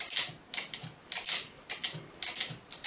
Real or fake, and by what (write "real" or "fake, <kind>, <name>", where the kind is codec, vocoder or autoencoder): real